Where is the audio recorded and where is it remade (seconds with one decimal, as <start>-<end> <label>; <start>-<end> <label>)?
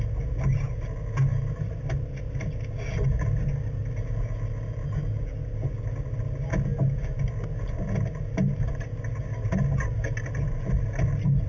0.0-11.5 recorded